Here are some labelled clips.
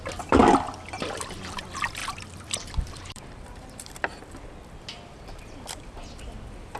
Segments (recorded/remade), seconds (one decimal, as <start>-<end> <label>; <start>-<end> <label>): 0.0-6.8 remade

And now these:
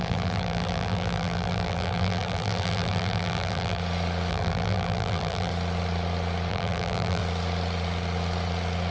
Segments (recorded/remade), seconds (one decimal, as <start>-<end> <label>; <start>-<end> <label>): 0.0-3.8 remade; 3.8-4.3 recorded; 4.3-5.5 remade; 5.5-6.5 recorded; 6.5-7.2 remade; 7.2-8.9 recorded

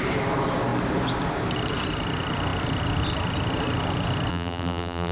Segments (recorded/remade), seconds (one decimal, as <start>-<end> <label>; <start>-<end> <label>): 0.0-4.3 recorded; 4.3-5.1 remade

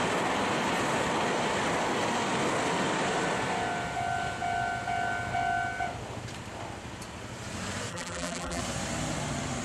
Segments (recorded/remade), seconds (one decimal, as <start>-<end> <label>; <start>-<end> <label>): 0.0-7.9 recorded; 7.9-8.6 remade; 8.6-9.6 recorded

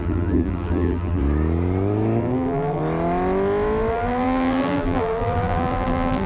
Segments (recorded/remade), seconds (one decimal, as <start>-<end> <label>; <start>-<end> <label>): 0.0-1.2 remade; 1.2-2.2 recorded; 2.2-2.8 remade; 2.8-3.9 recorded; 3.9-6.3 remade

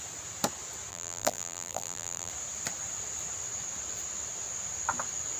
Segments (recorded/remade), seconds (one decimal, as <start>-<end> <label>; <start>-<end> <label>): 0.0-0.9 recorded; 0.9-2.3 remade; 2.3-5.4 recorded

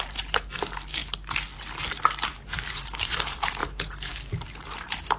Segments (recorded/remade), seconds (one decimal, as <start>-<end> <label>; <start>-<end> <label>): 0.0-1.0 remade; 1.0-2.3 recorded; 2.3-5.2 remade